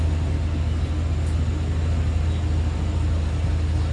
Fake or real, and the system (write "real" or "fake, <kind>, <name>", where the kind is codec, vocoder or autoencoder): real